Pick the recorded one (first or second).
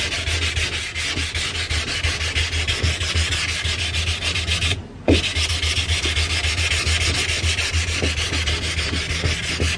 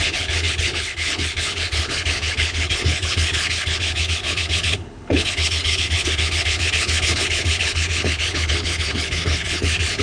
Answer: first